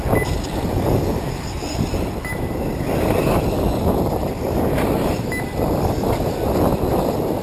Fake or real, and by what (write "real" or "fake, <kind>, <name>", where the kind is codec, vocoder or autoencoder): real